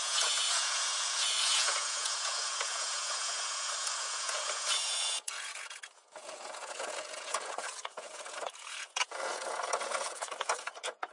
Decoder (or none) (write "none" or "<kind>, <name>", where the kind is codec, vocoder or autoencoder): vocoder, Vocos